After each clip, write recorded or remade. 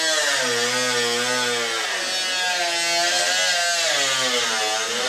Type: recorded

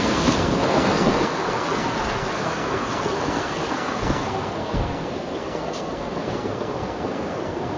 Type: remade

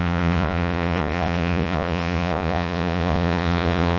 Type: remade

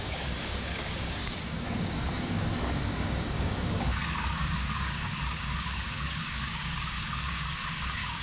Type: remade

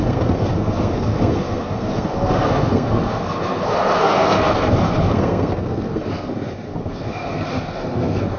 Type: remade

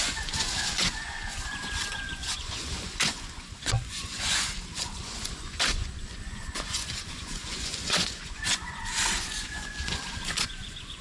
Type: remade